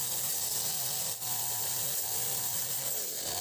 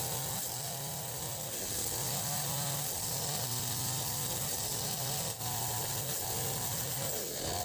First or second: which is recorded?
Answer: second